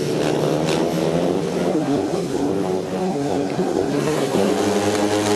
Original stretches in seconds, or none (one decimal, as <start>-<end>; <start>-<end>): 0.0-1.7; 2.5-3.0; 4.5-5.4